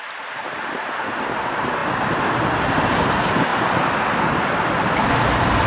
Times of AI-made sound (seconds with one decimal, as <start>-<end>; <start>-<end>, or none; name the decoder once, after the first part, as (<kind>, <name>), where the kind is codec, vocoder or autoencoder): none

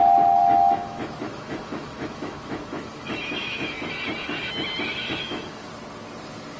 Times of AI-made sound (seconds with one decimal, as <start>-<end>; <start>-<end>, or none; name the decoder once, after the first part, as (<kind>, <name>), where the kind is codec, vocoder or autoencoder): 0.4-3.9 (autoencoder, DAC-VAE); 5.0-5.7

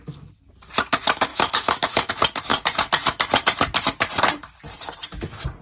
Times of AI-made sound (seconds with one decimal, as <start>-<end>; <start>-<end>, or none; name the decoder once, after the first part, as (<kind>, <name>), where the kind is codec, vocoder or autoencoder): 1.3-2.1 (autoencoder, DAC-VAE)

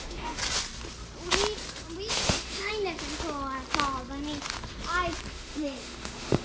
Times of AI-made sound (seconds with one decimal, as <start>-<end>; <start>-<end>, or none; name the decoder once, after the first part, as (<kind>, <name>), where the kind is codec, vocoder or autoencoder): 0.0-0.4 (autoencoder, DAC-VAE); 2.1-2.7; 5.3-6.4

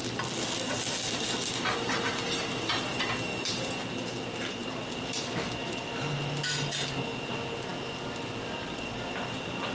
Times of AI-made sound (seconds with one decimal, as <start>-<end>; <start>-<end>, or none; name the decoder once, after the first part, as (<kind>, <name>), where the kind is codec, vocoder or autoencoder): none